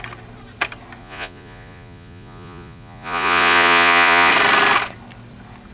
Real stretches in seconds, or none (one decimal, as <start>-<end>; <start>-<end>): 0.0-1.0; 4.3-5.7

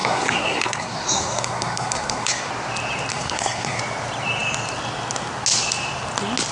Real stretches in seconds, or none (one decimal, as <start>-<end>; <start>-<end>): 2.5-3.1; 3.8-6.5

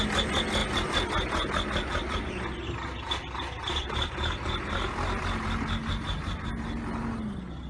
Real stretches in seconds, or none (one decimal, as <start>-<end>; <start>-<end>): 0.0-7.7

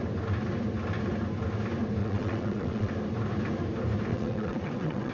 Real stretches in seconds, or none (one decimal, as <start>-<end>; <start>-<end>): 0.0-2.0; 2.9-4.1

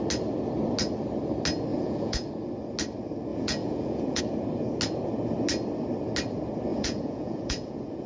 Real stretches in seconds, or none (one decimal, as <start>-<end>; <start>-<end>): 0.0-1.7; 2.3-3.3; 4.2-6.7